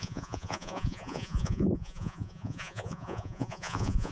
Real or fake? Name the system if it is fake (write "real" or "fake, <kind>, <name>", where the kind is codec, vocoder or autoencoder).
fake, vocoder, Vocos